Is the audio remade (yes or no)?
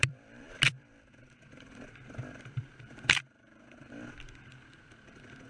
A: yes